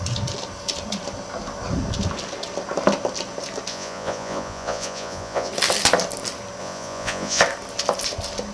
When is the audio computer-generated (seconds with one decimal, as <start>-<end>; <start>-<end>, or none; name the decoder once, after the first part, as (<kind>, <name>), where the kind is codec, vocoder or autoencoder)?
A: 3.7-5.5 (vocoder, Vocos); 6.6-7.4